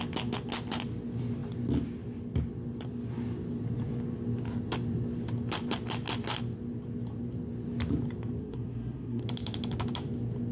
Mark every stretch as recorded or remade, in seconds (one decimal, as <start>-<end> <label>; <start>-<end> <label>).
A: 0.0-8.4 recorded; 8.4-9.2 remade; 9.2-10.5 recorded